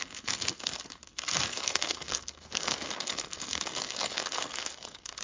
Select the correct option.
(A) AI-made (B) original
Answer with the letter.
A